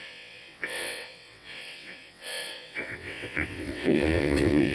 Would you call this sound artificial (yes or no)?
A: yes